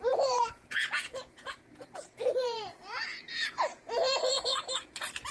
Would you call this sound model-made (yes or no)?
yes